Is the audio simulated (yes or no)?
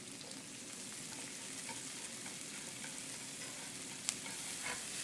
no